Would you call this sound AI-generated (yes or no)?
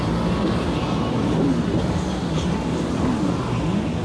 no